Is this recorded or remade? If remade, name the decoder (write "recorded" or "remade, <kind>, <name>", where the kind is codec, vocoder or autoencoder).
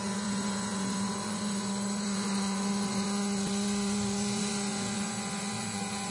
remade, vocoder, Vocos